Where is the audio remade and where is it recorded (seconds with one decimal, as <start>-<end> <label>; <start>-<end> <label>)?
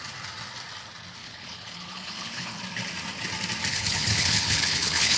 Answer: 0.0-1.2 recorded; 1.2-2.6 remade; 2.6-3.7 recorded; 3.7-5.2 remade